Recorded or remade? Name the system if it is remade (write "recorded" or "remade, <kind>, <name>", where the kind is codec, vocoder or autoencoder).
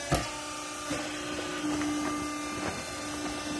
recorded